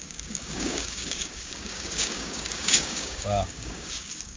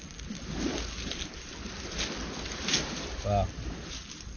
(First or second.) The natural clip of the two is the second